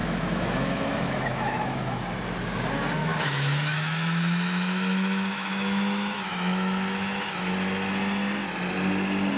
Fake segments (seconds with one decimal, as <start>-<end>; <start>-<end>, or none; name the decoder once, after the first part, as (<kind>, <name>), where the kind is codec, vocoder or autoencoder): 0.0-2.0 (autoencoder, DAC-VAE); 3.0-7.4